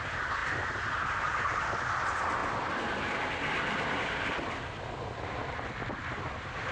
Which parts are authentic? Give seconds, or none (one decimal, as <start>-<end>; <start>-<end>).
0.0-6.7

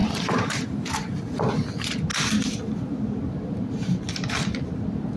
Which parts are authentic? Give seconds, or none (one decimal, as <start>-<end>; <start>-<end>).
1.0-5.2

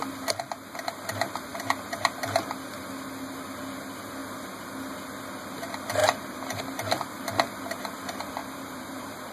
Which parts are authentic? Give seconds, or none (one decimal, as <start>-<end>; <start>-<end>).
0.0-6.0; 6.6-8.4

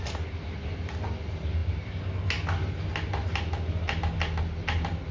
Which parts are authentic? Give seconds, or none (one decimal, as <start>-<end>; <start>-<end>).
0.0-5.1

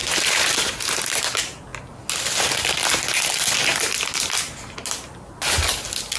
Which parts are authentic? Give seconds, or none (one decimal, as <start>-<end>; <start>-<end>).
1.2-6.2

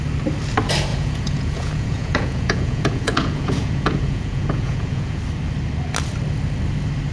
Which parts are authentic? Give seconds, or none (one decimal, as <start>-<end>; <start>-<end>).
0.0-0.9; 5.2-7.1

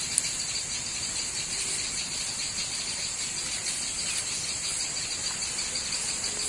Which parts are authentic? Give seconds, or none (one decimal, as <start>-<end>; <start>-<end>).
0.0-6.5